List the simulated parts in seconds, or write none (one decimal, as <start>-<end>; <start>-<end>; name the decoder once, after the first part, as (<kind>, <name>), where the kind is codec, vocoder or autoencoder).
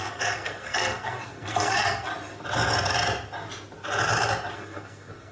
0.0-2.1 (codec, SNAC); 4.5-5.3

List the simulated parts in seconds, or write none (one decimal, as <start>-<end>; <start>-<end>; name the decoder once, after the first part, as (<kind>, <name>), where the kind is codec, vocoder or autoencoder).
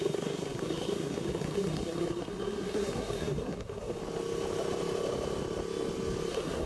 0.0-4.0 (codec, SNAC); 6.3-6.7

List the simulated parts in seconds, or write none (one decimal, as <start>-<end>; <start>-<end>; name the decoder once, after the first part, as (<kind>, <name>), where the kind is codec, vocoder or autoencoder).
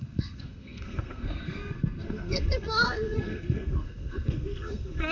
0.0-5.1 (codec, SNAC)